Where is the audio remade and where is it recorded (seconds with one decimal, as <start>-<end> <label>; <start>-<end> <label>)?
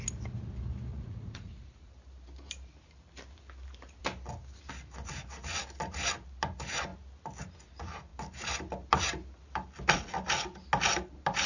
0.0-0.9 recorded; 0.9-1.9 remade; 1.9-11.5 recorded